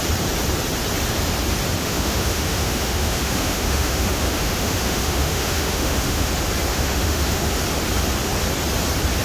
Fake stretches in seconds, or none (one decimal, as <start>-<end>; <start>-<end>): 1.8-6.3; 6.7-7.5